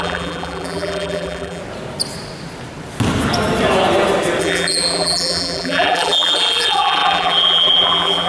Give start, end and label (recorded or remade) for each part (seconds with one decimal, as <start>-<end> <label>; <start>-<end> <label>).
0.0-1.6 remade; 1.6-4.4 recorded; 4.4-8.3 remade